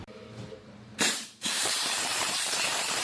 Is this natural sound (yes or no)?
no